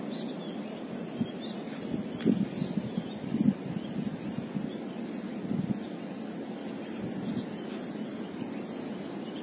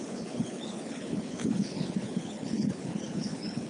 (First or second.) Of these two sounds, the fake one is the second